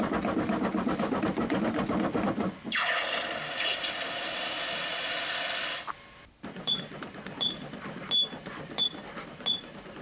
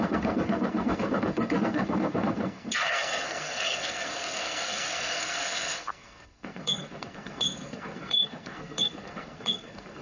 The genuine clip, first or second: first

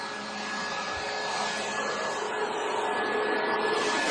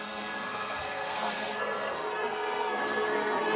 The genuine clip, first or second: first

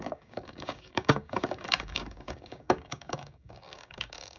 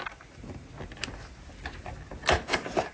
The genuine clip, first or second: second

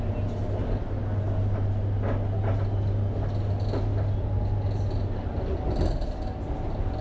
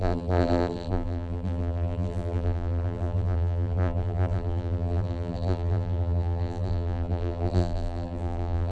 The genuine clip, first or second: first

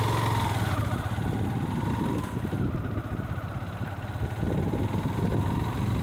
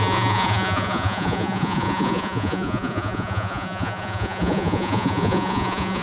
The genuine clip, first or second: first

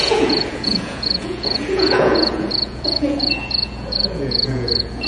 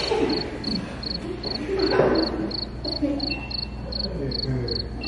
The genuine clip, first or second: second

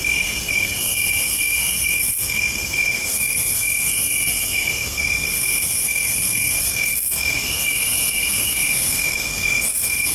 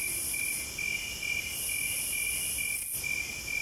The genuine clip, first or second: second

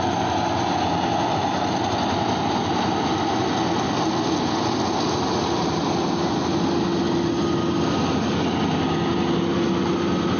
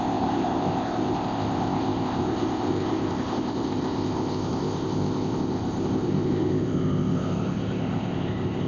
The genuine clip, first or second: first